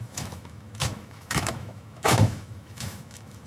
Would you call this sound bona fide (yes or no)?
no